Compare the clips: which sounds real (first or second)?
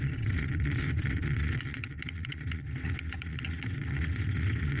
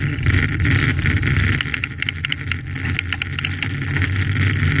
second